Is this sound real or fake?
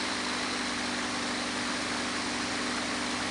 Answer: real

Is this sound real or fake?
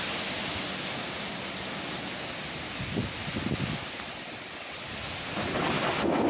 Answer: real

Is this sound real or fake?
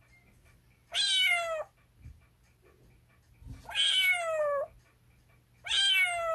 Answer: real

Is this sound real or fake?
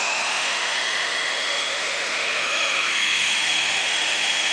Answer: fake